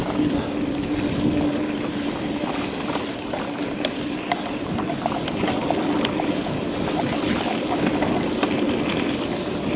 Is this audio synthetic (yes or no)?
no